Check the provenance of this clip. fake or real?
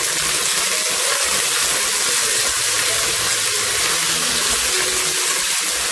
real